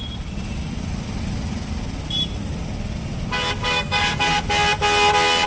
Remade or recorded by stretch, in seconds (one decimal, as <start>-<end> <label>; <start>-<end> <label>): 0.0-3.6 recorded; 3.6-4.4 remade; 4.4-5.5 recorded